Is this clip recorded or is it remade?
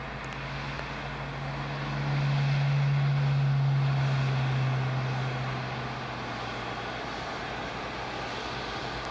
recorded